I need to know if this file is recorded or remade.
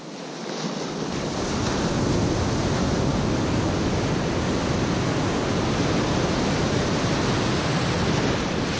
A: recorded